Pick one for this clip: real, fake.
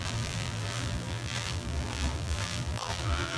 fake